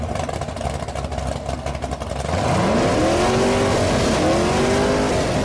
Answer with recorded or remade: recorded